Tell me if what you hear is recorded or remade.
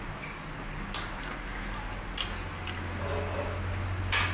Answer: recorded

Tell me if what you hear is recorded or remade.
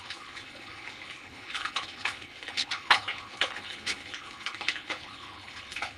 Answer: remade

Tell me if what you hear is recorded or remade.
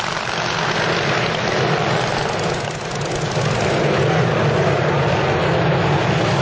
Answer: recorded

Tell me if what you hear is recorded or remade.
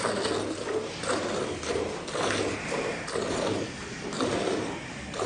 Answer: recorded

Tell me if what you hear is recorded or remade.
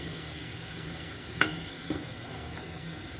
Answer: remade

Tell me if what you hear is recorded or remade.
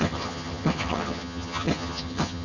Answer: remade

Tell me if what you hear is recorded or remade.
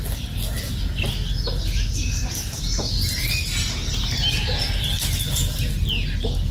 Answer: recorded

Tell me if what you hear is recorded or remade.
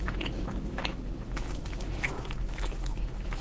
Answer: remade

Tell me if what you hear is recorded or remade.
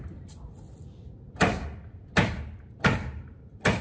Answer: recorded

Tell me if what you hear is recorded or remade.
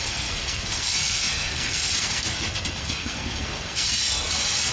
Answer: remade